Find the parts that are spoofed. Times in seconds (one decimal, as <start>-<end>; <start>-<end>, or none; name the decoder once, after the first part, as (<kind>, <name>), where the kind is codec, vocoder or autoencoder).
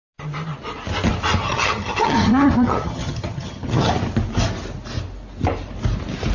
1.4-3.9 (vocoder, HiFi-GAN)